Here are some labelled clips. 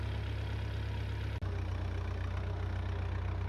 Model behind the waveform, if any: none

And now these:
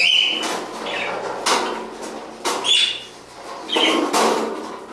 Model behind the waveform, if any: none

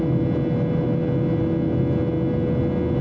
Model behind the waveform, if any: none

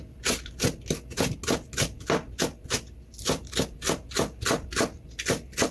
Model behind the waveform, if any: none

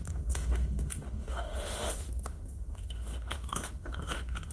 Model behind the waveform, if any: autoencoder, DAC-VAE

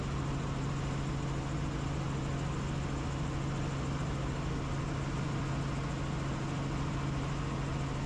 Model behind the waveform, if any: none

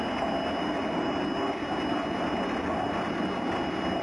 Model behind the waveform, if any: none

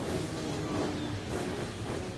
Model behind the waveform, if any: none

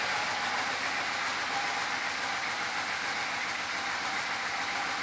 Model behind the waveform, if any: none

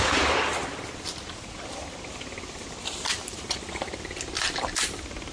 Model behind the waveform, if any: none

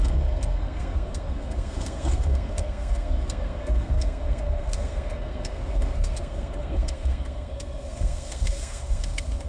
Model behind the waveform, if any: codec, SNAC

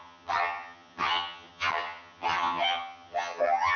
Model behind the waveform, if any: vocoder, HiFi-GAN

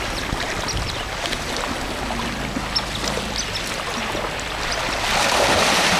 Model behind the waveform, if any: none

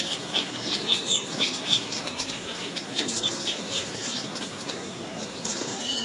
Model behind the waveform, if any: codec, SNAC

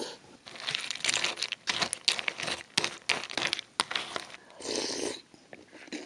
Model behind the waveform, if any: none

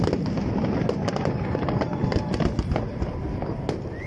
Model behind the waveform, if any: none